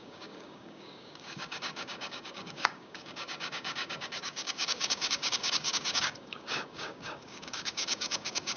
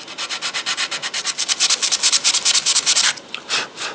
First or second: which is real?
second